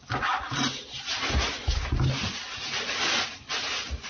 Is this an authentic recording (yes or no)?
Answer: yes